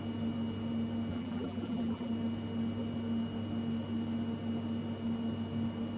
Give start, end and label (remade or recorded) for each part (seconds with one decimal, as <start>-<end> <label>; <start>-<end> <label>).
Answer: 0.0-1.1 recorded; 1.1-2.1 remade; 2.1-6.0 recorded